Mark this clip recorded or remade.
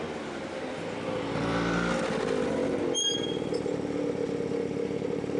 recorded